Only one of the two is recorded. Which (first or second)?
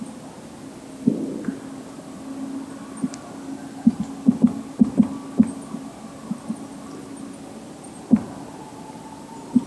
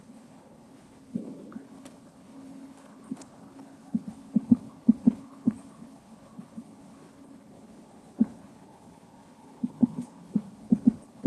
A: first